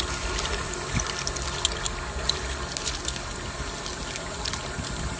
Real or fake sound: real